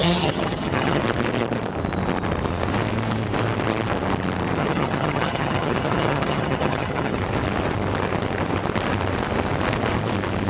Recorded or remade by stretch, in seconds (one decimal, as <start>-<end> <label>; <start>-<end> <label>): 0.0-1.0 remade; 1.0-4.6 recorded; 4.6-7.2 remade; 7.2-10.5 recorded